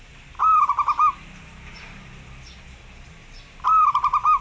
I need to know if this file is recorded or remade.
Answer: recorded